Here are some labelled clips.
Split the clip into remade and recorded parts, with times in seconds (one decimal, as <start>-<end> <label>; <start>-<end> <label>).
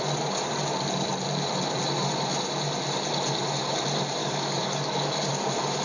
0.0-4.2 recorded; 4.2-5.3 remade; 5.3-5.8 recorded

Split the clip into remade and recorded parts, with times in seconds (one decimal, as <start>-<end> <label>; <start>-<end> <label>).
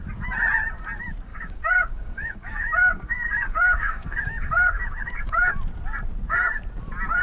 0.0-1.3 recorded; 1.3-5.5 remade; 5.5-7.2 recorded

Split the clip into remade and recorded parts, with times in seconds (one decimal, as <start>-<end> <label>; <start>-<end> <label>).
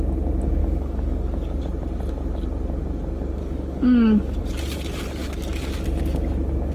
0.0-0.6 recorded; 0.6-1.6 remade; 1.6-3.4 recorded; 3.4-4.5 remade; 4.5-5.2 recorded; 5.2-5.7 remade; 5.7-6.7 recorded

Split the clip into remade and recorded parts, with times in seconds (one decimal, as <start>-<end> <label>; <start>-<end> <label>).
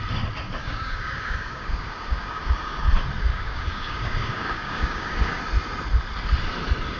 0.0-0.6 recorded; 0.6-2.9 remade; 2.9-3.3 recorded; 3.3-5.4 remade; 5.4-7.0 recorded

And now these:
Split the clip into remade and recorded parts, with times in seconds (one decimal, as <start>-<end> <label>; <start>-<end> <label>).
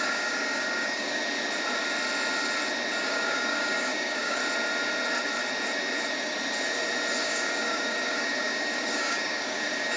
0.0-1.2 remade; 1.2-3.0 recorded; 3.0-4.4 remade; 4.4-7.2 recorded; 7.2-10.0 remade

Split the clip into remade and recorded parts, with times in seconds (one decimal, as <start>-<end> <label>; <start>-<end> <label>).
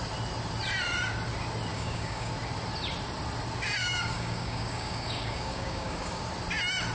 0.0-1.7 recorded; 1.7-2.3 remade; 2.3-3.8 recorded; 3.8-6.2 remade; 6.2-6.9 recorded